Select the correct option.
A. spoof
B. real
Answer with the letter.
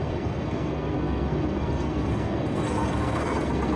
A